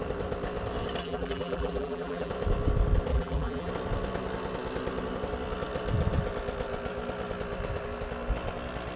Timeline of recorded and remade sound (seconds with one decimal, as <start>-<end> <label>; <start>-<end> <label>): 0.0-1.0 recorded; 1.0-2.3 remade; 2.3-3.1 recorded; 3.1-3.7 remade; 3.7-9.0 recorded